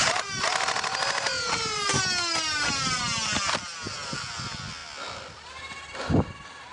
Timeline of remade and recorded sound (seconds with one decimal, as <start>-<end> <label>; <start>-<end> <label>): 0.0-6.7 recorded